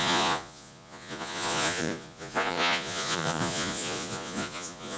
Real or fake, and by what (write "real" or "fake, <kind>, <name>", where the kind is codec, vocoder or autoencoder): fake, vocoder, Vocos